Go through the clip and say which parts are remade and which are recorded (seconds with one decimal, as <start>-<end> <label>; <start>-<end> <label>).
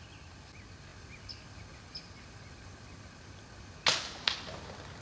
0.0-5.0 recorded